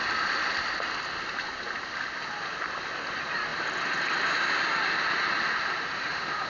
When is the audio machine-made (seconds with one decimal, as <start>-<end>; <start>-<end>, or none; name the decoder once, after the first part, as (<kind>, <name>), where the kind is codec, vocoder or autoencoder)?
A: none